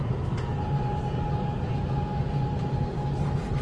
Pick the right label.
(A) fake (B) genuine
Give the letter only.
B